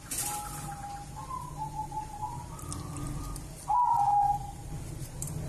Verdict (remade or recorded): recorded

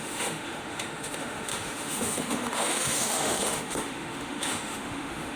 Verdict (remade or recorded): remade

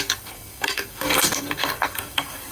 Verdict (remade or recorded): remade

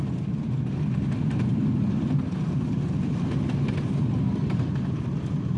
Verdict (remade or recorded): recorded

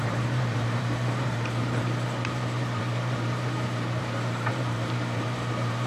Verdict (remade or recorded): remade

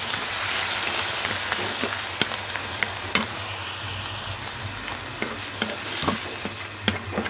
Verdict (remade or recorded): recorded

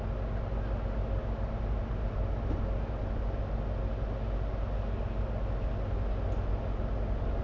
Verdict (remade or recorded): recorded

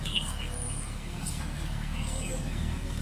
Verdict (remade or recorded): remade